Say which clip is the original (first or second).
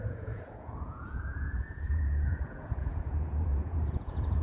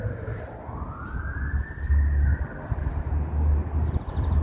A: second